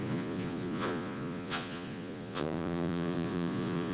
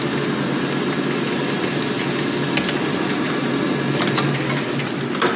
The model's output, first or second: first